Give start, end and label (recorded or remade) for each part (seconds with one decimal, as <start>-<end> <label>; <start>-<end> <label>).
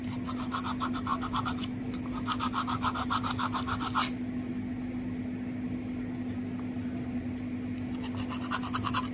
0.0-9.1 recorded